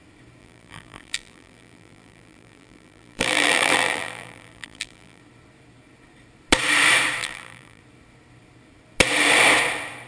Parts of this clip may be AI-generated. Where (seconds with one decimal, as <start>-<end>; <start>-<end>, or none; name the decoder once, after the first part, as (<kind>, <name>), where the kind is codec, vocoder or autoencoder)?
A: 0.4-5.2 (vocoder, BigVGAN v2); 7.2-7.8